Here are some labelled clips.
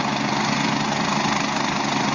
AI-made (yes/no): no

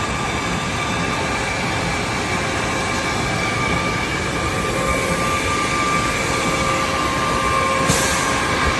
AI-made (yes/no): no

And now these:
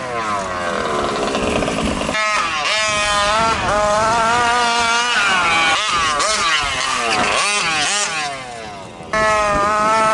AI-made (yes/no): no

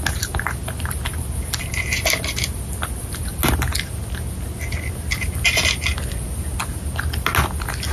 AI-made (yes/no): no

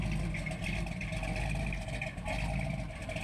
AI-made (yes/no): no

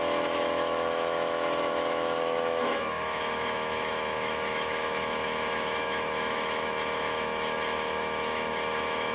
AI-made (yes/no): yes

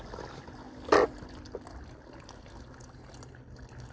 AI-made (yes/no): no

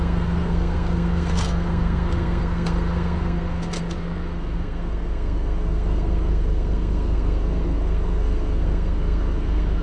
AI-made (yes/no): yes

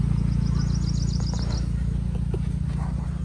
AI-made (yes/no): no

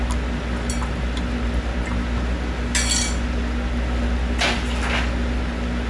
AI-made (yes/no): no